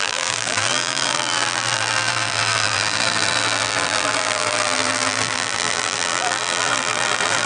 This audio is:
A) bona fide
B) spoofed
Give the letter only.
B